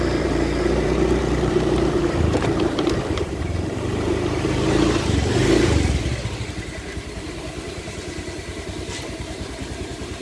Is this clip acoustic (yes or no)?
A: no